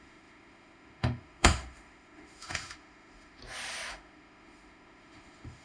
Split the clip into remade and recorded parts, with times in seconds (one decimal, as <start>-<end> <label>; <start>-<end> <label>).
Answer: 0.0-3.4 remade; 3.4-3.9 recorded; 3.9-5.6 remade